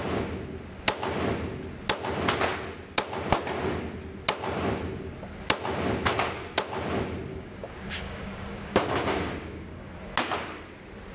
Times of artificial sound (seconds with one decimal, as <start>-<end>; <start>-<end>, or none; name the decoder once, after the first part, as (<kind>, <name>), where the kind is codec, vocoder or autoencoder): 7.3-9.9 (codec, DAC)